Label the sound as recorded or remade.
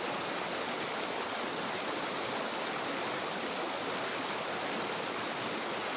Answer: recorded